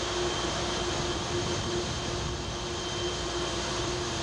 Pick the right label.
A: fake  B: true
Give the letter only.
B